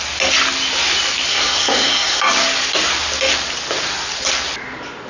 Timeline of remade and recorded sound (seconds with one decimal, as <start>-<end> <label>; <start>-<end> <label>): 0.0-1.3 recorded; 1.3-2.2 remade; 2.2-5.1 recorded